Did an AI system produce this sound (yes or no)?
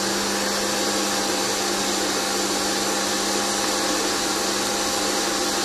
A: no